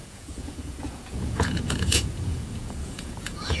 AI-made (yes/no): yes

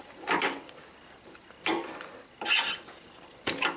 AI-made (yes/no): no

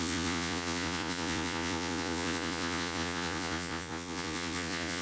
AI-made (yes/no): yes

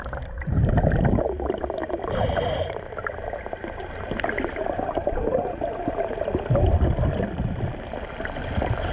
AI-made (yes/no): no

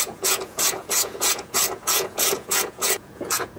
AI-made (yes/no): yes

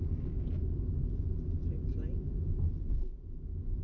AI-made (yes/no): no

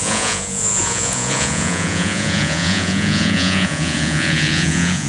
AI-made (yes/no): yes